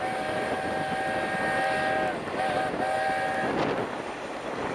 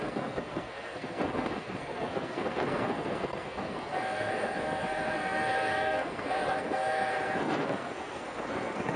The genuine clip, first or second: first